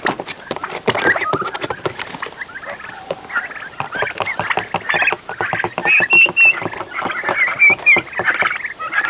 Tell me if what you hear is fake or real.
real